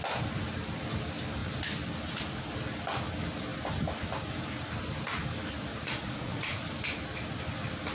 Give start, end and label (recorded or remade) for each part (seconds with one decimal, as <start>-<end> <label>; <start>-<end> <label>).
0.0-5.7 recorded; 5.7-6.6 remade; 6.6-7.9 recorded